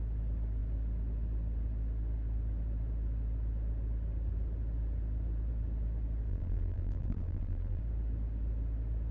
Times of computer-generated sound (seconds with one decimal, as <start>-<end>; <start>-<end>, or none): 6.3-7.8